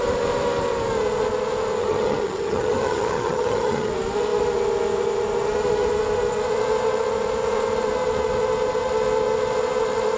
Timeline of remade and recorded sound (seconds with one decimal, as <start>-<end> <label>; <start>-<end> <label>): 0.0-1.8 recorded; 1.8-3.9 remade; 3.9-10.2 recorded